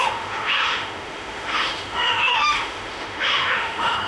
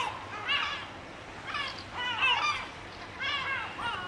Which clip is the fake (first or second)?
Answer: first